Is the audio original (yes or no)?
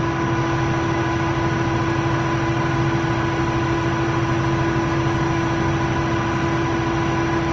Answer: yes